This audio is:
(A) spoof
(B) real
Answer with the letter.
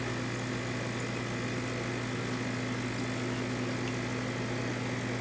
B